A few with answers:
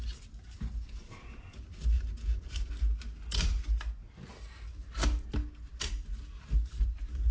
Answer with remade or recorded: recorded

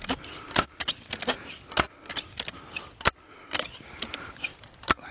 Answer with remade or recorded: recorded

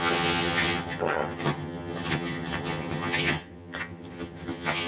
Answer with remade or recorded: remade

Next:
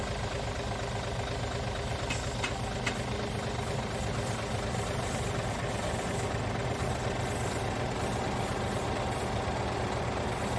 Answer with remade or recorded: recorded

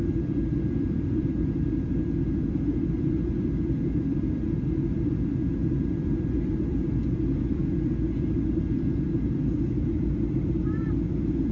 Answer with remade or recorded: remade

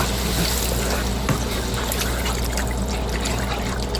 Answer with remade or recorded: recorded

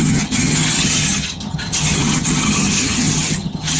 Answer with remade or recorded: remade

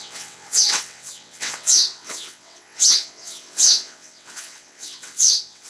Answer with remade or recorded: remade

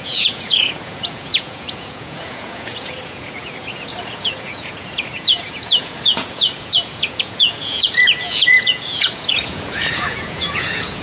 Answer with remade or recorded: remade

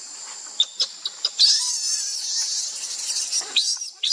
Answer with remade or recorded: recorded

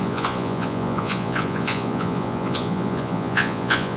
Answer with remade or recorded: remade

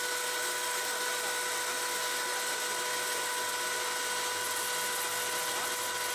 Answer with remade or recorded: recorded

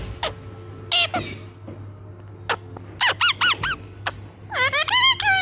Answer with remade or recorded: recorded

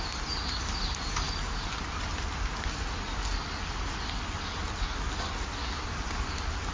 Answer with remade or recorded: recorded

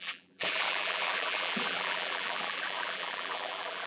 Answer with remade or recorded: remade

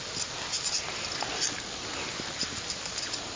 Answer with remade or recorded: recorded